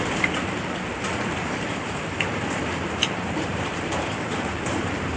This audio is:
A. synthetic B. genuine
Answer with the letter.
A